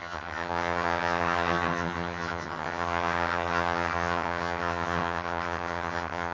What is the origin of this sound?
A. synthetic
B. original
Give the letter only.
A